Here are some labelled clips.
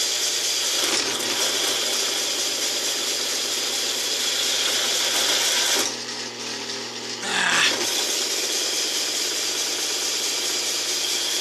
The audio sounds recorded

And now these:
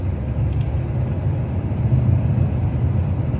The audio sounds recorded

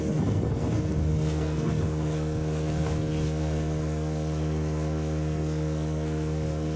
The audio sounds remade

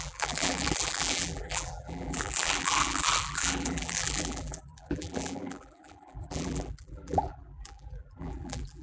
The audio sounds remade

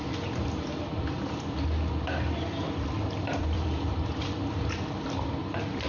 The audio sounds remade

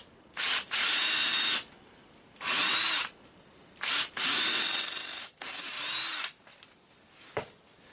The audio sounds recorded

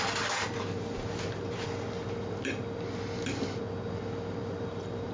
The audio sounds recorded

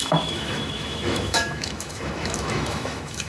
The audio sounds remade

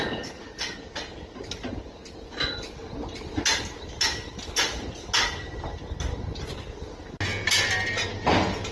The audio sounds recorded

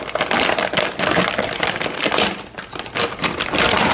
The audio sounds recorded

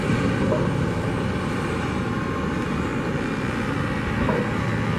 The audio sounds recorded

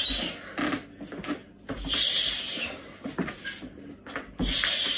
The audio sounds recorded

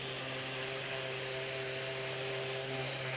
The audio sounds recorded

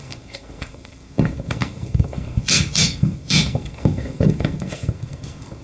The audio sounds remade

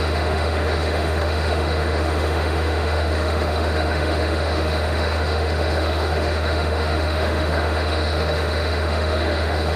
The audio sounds remade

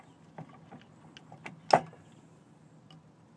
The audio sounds recorded